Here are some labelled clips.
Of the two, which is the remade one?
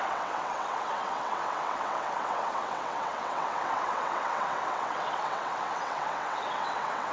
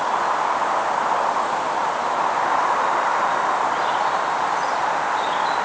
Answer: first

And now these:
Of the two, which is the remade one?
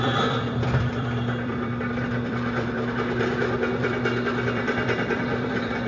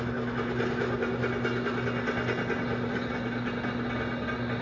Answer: first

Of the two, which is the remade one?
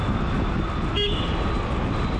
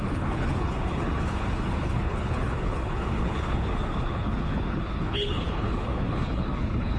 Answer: second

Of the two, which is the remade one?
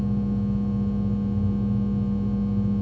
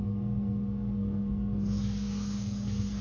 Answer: second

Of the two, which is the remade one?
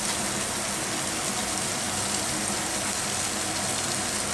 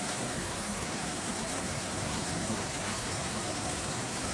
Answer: second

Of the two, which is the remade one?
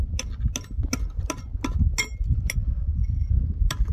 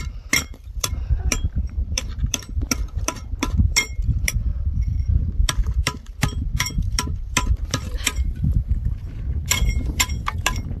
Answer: second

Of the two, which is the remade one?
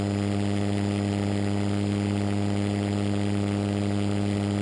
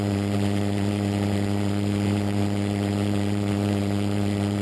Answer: second